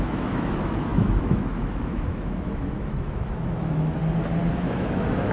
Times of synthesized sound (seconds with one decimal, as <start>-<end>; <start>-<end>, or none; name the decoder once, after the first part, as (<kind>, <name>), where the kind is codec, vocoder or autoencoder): 0.0-4.0 (autoencoder, DAC-VAE); 4.5-5.3